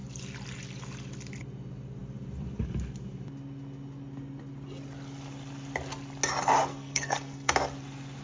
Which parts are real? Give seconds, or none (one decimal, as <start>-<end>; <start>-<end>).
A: 0.0-6.7; 7.5-8.2